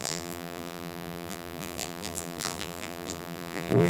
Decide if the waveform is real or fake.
fake